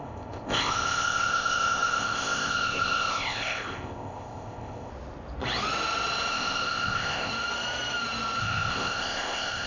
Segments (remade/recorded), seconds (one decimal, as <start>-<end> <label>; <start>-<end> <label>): 0.0-4.9 remade; 4.9-6.3 recorded; 6.3-7.3 remade; 7.3-8.4 recorded; 8.4-9.7 remade